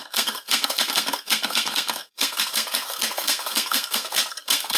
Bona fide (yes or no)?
no